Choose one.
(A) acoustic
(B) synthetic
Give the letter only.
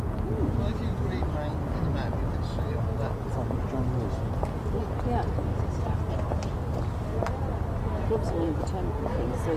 A